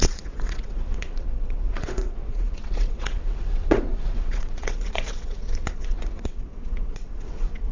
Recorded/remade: remade